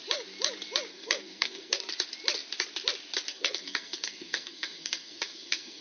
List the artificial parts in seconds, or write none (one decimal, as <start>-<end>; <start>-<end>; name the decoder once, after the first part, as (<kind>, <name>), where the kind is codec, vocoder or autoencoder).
0.9-1.8 (codec, SNAC); 3.3-5.8